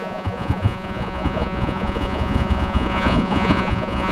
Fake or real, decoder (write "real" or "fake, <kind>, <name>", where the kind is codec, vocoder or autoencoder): fake, vocoder, Vocos